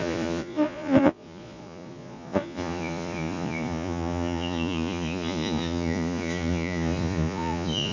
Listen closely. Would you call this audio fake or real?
fake